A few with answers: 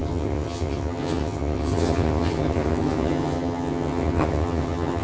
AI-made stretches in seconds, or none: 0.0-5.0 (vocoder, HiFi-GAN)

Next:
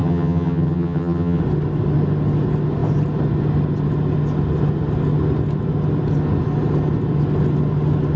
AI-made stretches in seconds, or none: 0.0-1.4 (vocoder, HiFi-GAN)

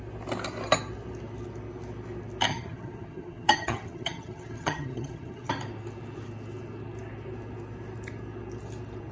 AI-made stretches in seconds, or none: 2.5-5.5 (vocoder, HiFi-GAN)

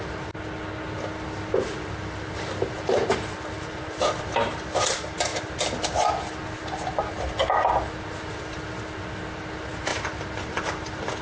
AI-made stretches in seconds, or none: none

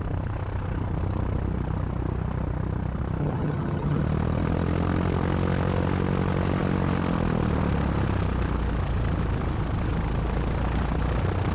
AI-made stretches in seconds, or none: 3.2-4.0 (vocoder, HiFi-GAN)

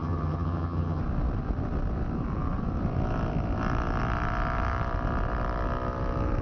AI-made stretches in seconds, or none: 0.0-1.0 (vocoder, HiFi-GAN)

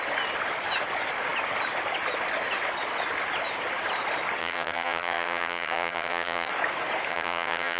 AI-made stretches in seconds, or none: 4.4-6.5 (vocoder, HiFi-GAN); 7.1-7.8